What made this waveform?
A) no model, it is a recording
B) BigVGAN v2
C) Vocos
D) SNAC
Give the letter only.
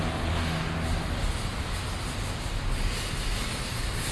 A